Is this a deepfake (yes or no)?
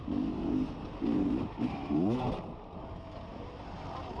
no